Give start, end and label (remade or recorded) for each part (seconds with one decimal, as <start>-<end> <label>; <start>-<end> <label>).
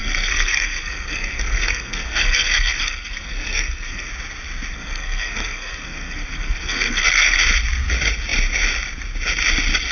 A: 0.0-4.1 remade; 4.1-4.7 recorded; 4.7-7.4 remade; 7.4-9.9 recorded